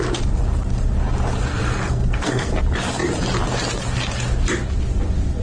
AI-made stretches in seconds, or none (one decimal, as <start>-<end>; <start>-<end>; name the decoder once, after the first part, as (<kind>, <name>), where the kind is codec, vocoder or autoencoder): 1.5-2.5 (codec, SNAC)